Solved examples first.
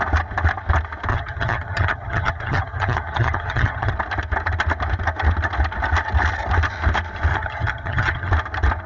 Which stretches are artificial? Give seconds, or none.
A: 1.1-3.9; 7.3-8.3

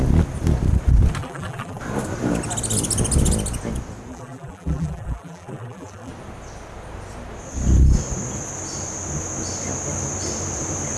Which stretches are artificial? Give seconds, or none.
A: 1.2-1.8; 4.1-6.1

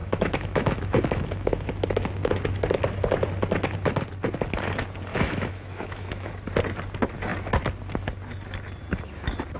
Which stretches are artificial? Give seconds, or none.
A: 0.0-1.7; 5.1-6.3

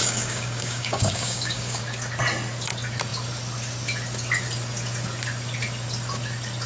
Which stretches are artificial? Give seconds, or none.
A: 0.0-1.8

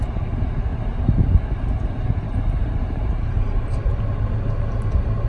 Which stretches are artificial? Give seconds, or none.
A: 0.7-3.9

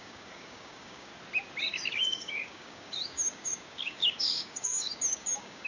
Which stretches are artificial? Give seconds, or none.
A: 0.0-1.1; 1.6-5.7

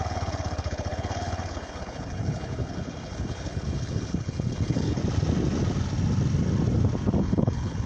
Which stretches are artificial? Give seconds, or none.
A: 0.0-5.0; 7.2-7.9